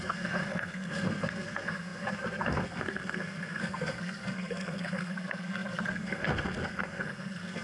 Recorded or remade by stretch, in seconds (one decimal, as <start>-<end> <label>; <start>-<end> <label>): 0.0-7.6 remade